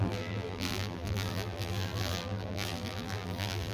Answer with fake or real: fake